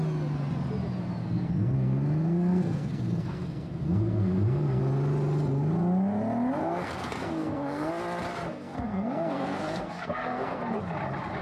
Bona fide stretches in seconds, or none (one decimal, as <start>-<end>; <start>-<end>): 0.0-1.2; 4.8-6.6; 7.9-8.3; 10.8-11.4